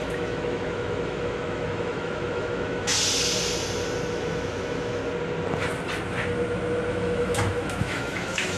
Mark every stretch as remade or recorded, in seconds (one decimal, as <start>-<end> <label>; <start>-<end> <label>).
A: 0.0-2.9 remade; 2.9-4.1 recorded; 4.1-5.0 remade; 5.0-6.9 recorded; 6.9-8.6 remade